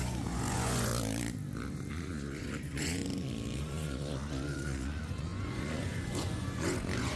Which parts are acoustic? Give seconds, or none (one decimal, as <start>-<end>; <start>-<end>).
0.9-1.9; 3.0-3.6